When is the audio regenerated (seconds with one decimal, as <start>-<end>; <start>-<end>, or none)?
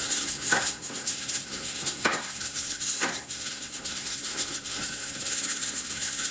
0.0-6.3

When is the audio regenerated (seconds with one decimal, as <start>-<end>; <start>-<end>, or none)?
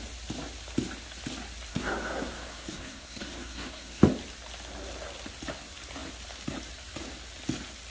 1.7-4.0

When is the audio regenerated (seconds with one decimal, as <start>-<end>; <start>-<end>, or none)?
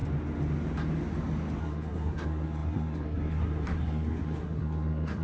1.6-5.2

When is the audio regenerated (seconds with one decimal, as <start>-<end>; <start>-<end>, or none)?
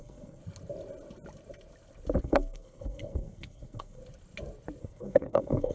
0.0-0.4; 2.2-4.0; 4.8-5.7